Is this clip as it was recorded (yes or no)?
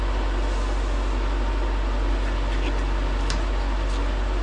yes